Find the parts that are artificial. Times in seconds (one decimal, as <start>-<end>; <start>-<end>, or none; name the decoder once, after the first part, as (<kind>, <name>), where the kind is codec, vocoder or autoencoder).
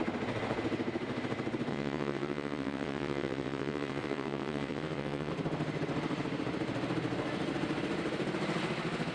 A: 1.7-5.3 (vocoder, WaveNeXt)